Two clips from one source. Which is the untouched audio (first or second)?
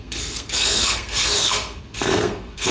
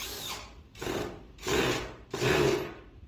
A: second